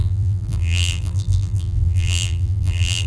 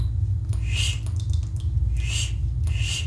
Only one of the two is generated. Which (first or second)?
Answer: first